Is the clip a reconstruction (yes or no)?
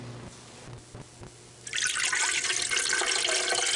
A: no